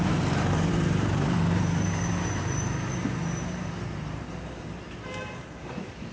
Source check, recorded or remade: remade